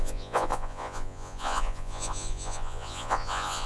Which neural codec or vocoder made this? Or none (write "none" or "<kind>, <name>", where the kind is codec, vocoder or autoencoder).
vocoder, Vocos